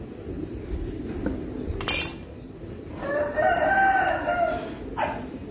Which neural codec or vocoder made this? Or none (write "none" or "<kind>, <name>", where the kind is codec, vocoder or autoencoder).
none